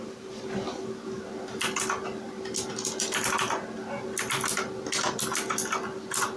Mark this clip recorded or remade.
recorded